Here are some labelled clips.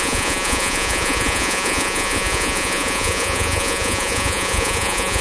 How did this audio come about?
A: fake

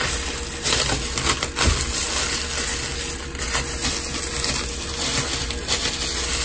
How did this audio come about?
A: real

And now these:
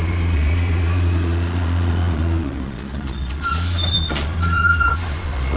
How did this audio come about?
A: fake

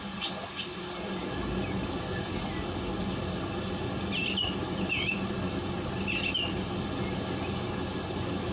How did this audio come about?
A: real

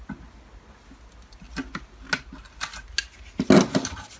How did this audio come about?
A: real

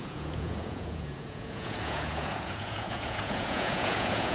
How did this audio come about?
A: fake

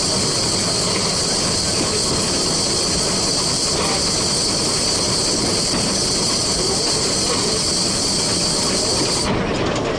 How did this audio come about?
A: real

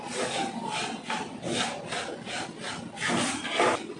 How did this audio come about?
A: real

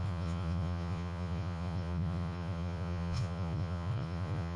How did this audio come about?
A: fake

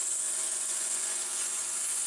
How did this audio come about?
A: fake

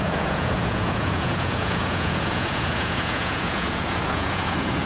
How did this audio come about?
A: fake